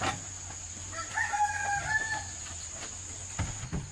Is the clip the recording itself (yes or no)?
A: yes